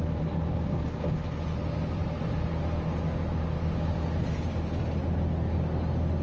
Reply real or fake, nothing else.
real